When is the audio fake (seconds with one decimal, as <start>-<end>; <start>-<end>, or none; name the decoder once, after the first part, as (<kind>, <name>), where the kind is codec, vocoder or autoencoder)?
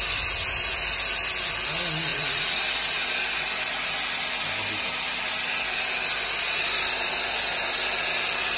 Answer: 2.1-2.6 (vocoder, Vocos)